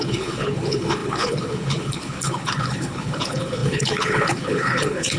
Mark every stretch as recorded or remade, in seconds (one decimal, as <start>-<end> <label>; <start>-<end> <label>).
0.0-5.2 remade